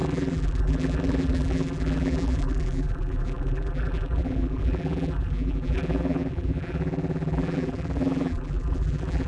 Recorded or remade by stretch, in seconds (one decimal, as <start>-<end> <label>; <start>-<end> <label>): 0.0-9.3 remade